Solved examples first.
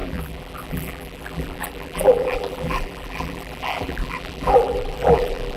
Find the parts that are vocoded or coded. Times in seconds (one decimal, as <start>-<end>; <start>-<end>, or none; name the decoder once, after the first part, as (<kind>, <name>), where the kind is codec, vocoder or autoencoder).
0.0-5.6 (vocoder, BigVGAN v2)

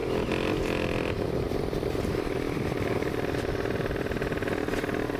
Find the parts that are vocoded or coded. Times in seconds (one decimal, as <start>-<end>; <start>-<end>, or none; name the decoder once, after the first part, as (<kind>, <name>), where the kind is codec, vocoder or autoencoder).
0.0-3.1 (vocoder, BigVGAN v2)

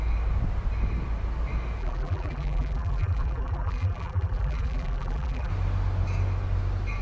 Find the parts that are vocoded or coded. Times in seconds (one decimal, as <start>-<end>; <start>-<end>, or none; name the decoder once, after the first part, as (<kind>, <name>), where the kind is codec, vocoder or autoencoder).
1.8-5.5 (vocoder, BigVGAN v2)

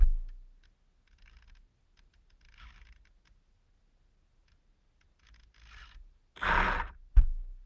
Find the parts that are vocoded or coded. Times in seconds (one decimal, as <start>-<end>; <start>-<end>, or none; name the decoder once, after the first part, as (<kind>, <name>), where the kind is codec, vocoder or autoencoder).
none

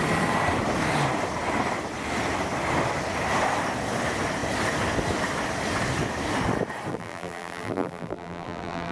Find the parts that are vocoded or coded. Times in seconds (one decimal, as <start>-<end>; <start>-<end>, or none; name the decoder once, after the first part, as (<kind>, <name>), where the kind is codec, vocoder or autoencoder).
6.9-8.9 (vocoder, BigVGAN v2)